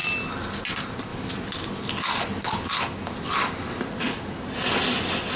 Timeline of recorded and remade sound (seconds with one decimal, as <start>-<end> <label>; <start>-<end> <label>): 0.0-5.4 recorded